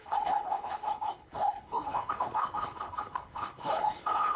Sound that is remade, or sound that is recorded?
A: remade